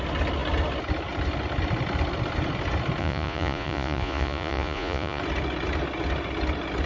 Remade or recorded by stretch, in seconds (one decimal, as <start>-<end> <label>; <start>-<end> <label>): 0.0-3.0 recorded; 3.0-5.2 remade; 5.2-6.9 recorded